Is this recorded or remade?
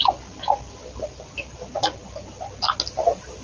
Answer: recorded